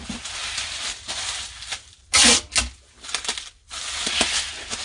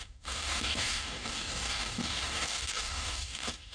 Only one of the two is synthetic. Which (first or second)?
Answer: second